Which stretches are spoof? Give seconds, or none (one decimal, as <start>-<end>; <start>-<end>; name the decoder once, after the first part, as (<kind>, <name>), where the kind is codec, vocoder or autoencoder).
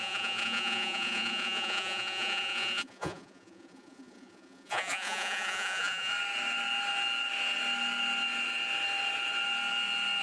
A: 0.0-6.1 (vocoder, Vocos)